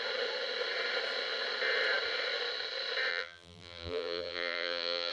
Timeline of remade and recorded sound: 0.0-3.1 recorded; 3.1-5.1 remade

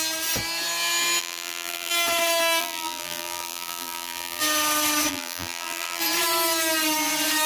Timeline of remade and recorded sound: 0.0-1.2 recorded; 1.2-1.9 remade; 1.9-2.6 recorded; 2.6-4.4 remade; 4.4-5.1 recorded; 5.1-6.0 remade; 6.0-7.5 recorded

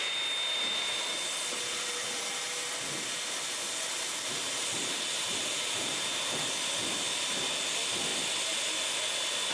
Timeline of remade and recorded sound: 0.0-1.5 recorded; 1.5-2.3 remade; 2.3-8.1 recorded; 8.1-9.5 remade

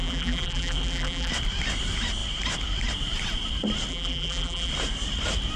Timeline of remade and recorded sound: 0.0-1.3 remade; 1.3-3.9 recorded; 3.9-4.7 remade; 4.7-5.6 recorded